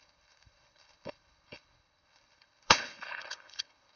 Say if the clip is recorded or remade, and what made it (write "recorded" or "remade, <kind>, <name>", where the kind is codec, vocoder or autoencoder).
remade, codec, HILCodec